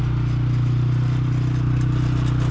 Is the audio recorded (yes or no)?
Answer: yes